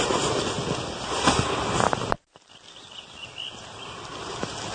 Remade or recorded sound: recorded